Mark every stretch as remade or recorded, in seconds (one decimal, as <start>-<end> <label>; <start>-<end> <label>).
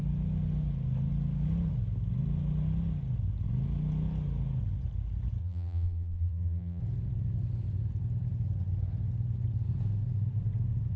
0.0-5.4 recorded; 5.4-6.8 remade; 6.8-11.0 recorded